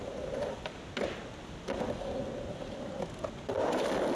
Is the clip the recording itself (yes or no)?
yes